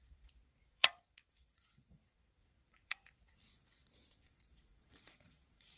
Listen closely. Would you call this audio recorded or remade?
remade